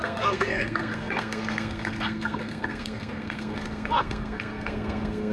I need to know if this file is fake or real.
fake